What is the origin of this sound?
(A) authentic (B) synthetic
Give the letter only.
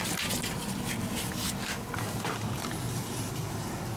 A